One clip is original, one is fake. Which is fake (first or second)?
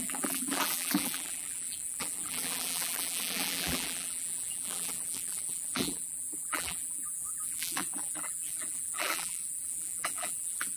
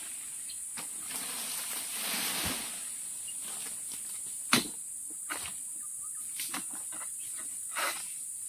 first